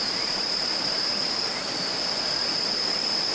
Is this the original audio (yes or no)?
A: yes